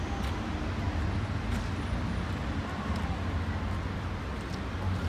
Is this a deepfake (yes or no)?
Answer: no